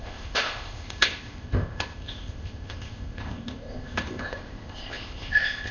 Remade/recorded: remade